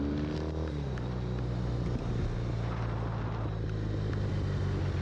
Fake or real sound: real